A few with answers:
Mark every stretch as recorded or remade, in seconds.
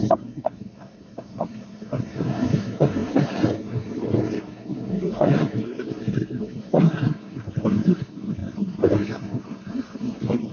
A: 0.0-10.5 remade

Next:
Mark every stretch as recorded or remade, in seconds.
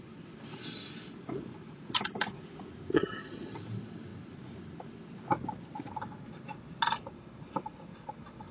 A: 0.0-2.9 recorded; 2.9-3.6 remade; 3.6-8.5 recorded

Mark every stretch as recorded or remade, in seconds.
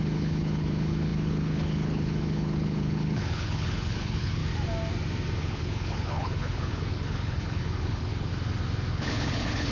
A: 0.0-4.4 remade; 4.4-5.4 recorded; 5.4-8.3 remade; 8.3-8.9 recorded; 8.9-9.7 remade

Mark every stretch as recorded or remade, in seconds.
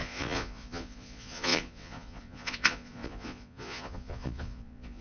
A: 0.0-5.0 remade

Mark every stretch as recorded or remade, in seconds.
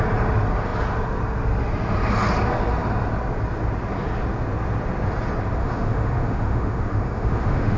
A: 0.0-5.6 recorded; 5.6-7.8 remade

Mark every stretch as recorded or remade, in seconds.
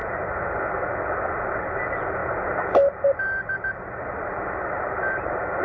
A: 0.0-5.6 recorded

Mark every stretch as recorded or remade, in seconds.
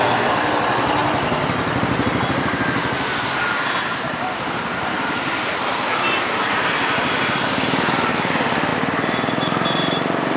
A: 0.0-10.4 recorded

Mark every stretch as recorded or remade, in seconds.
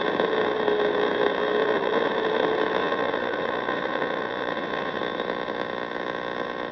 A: 0.0-1.6 recorded; 1.6-2.1 remade; 2.1-2.8 recorded; 2.8-5.0 remade; 5.0-6.7 recorded